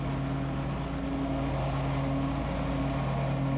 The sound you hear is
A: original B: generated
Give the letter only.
A